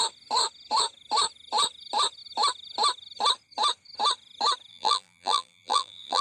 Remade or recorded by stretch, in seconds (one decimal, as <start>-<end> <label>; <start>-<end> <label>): 0.0-4.7 recorded; 4.7-6.2 remade